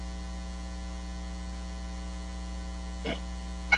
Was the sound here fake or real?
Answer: real